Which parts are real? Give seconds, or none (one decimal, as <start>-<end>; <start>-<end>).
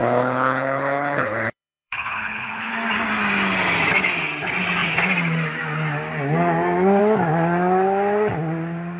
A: 2.7-9.0